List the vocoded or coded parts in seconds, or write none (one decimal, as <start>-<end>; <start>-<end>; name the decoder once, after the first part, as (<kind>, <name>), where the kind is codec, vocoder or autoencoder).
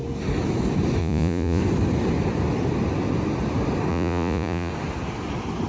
1.0-1.6 (vocoder, Vocos); 3.9-4.7